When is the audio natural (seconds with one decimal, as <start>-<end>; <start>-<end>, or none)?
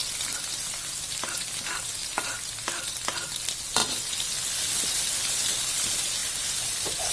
0.0-3.8; 4.9-6.2